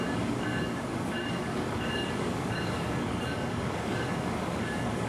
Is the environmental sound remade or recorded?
remade